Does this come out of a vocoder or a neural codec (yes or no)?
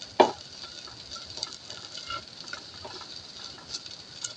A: no